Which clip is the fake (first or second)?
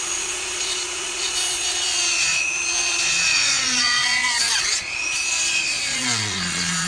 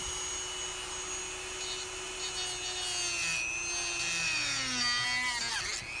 first